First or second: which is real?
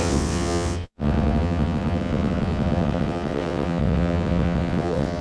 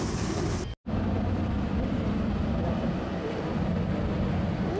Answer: second